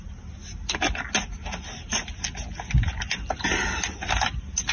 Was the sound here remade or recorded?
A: recorded